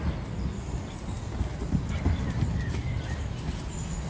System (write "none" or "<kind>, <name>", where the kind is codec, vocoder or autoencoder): none